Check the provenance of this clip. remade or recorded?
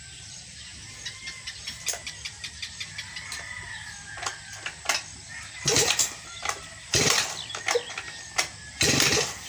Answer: recorded